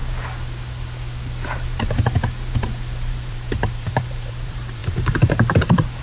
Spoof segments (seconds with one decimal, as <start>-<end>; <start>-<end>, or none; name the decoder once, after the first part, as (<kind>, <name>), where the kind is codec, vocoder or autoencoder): 3.3-6.0 (vocoder, BigVGAN v2)

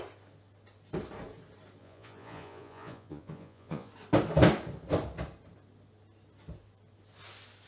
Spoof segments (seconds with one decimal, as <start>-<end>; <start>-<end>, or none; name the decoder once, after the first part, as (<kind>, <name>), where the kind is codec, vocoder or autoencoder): 1.8-3.9 (vocoder, Vocos)

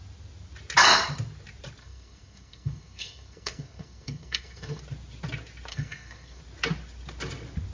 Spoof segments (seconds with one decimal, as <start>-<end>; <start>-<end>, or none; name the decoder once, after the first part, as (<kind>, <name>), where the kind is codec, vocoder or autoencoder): 1.8-4.8 (codec, SNAC); 5.7-6.4

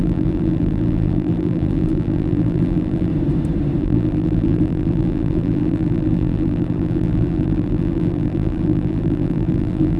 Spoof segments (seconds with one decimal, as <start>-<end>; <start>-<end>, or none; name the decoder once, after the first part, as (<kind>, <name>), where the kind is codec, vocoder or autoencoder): 0.0-3.1 (vocoder, BigVGAN v2); 3.8-10.0